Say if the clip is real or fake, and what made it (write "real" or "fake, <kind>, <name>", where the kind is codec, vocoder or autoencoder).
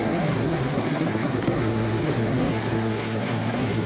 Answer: fake, codec, SNAC